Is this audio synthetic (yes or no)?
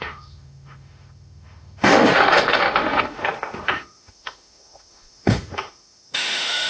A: yes